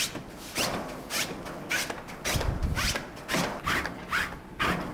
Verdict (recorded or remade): recorded